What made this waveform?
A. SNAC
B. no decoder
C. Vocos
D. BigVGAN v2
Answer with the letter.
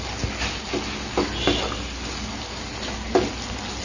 B